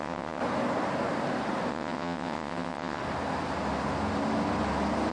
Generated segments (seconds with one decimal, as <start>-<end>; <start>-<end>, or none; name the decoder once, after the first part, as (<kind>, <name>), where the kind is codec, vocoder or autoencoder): 0.0-0.4 (vocoder, WaveNeXt); 1.7-3.0